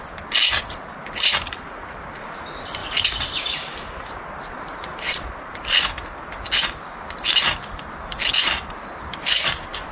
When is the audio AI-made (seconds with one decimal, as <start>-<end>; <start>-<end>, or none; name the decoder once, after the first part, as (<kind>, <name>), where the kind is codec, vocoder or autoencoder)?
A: none